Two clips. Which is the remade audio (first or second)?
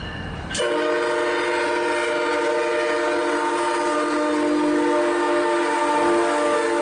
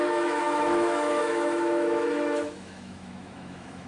second